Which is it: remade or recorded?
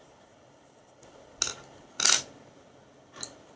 recorded